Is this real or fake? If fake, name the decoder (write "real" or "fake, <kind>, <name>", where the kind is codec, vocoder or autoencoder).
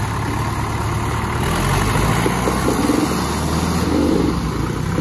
real